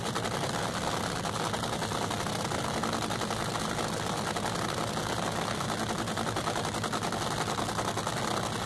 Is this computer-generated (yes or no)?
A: no